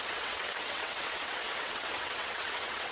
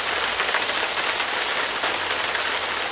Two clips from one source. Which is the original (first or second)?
second